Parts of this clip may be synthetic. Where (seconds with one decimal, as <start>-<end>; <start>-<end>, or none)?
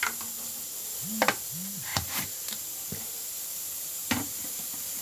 1.9-5.0